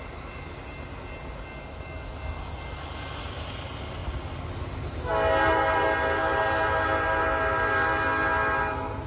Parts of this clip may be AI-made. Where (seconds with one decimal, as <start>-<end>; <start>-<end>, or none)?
none